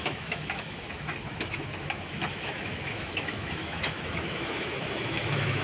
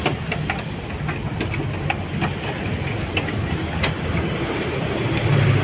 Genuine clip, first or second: second